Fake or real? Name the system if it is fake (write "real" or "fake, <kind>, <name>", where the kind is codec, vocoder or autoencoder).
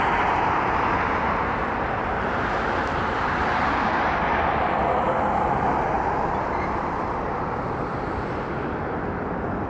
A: real